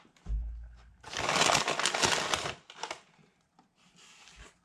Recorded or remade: recorded